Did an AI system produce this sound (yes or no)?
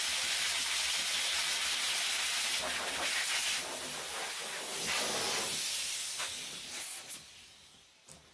no